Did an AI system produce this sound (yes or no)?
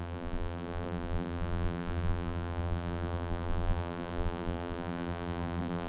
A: yes